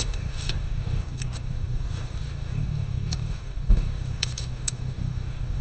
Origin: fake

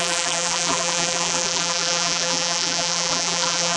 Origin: fake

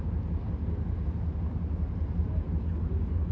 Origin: real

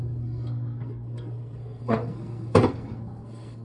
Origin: fake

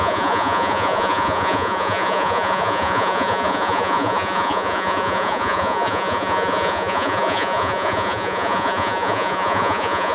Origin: fake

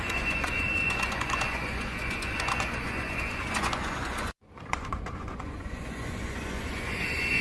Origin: fake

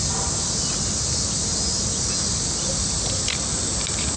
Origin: real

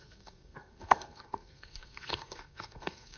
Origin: fake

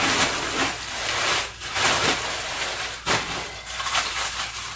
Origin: real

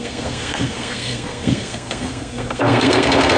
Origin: fake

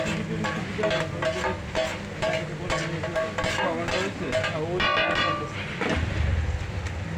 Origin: real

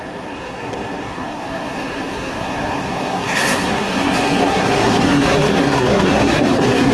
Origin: fake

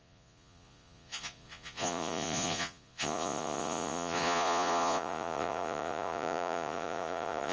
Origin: fake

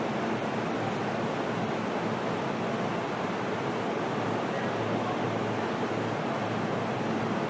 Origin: real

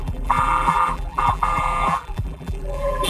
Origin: fake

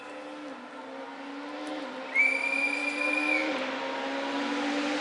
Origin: real